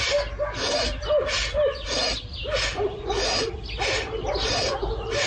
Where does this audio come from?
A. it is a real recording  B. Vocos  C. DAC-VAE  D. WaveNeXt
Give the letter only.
A